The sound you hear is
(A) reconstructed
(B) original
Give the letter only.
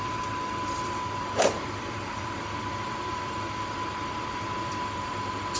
A